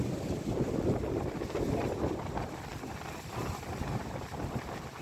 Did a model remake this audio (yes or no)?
no